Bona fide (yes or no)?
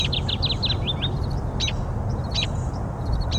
yes